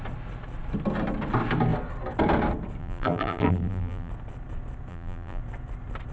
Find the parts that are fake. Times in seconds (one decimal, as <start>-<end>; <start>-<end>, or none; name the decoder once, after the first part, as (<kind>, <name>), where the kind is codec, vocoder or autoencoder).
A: 2.8-4.1 (vocoder, BigVGAN v2); 4.9-5.4